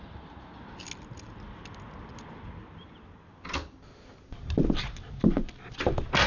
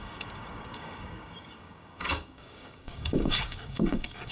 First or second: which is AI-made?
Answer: second